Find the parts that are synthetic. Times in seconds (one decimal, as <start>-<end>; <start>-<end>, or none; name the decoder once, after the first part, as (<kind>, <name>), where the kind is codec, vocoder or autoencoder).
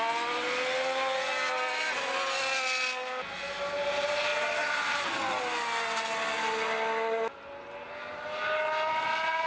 none